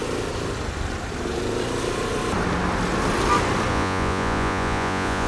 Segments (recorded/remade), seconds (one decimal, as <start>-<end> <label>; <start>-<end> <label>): 0.0-3.7 recorded; 3.7-5.3 remade